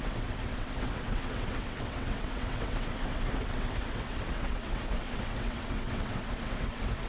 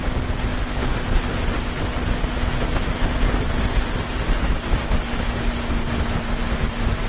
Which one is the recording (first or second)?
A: second